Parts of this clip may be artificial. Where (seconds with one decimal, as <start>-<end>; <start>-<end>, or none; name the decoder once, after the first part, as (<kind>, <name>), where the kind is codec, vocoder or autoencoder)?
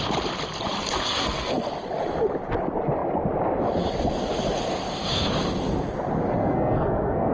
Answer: 1.0-1.7 (codec, SNAC); 6.4-7.3